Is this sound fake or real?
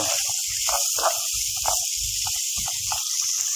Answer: real